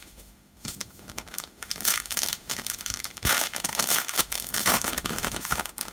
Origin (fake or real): fake